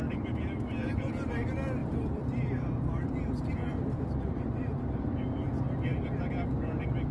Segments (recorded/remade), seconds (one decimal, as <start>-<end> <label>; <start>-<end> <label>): 0.0-1.8 recorded; 1.8-4.8 remade; 4.8-7.1 recorded